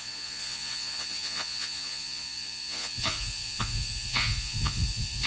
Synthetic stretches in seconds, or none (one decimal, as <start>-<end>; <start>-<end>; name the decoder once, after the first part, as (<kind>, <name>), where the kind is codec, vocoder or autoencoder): 0.0-5.3 (vocoder, Vocos)

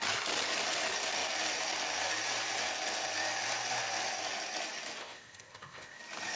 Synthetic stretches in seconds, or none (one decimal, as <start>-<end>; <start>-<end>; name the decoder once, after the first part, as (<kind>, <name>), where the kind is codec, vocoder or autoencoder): 5.0-6.0 (codec, ZipCodec)

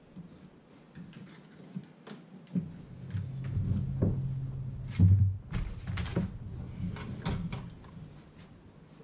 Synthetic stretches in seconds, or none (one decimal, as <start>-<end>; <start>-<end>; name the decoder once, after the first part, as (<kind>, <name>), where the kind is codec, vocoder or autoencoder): none

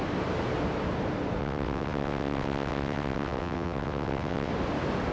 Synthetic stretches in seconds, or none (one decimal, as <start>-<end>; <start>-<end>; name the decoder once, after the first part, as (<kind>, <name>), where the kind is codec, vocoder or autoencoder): 1.4-4.5 (vocoder, WaveNeXt)

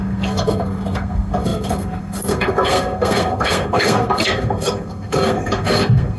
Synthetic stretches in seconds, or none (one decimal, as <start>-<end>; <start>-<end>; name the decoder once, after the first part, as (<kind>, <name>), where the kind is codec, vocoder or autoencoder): 0.0-6.2 (codec, SNAC)

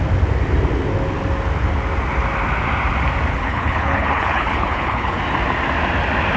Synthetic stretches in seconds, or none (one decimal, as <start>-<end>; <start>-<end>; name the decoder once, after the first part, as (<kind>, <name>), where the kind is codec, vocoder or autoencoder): 3.3-5.2 (codec, HILCodec)

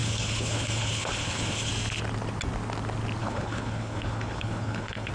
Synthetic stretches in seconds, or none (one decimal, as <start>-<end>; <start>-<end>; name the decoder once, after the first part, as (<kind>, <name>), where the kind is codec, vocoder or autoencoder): 0.0-1.7 (codec, HILCodec); 3.2-5.1

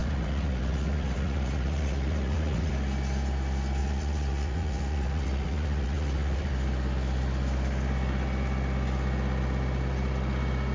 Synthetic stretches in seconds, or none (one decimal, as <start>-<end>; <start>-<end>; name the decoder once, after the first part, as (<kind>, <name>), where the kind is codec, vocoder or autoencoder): 0.0-2.7 (vocoder, Vocos); 3.8-6.5